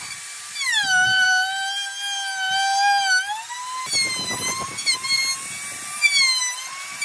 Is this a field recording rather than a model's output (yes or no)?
yes